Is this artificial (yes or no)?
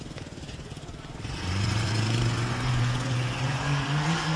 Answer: yes